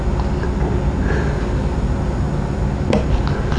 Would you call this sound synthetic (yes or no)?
no